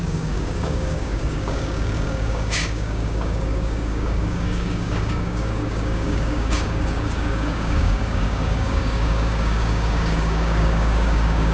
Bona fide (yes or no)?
no